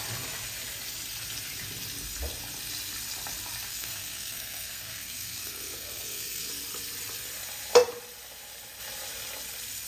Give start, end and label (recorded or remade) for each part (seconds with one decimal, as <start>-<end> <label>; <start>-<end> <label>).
0.0-3.7 recorded; 3.7-6.5 remade; 6.5-9.9 recorded